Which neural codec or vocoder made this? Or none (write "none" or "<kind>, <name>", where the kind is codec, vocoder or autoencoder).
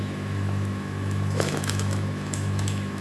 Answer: autoencoder, DAC-VAE